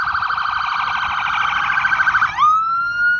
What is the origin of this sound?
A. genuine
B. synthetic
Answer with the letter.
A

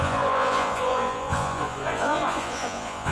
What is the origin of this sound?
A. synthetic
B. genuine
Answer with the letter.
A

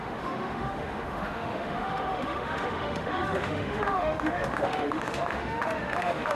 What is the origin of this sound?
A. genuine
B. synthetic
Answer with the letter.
B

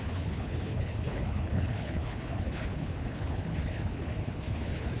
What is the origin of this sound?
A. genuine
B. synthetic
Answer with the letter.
B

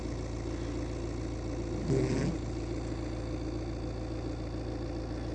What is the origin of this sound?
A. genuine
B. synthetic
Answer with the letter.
A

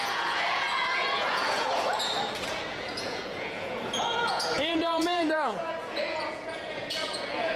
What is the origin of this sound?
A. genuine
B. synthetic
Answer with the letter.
B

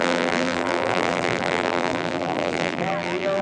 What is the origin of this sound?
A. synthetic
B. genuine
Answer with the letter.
A